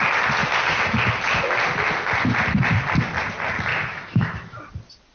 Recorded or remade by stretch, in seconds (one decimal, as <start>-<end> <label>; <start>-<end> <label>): 0.0-3.7 recorded; 3.7-4.6 remade; 4.6-5.1 recorded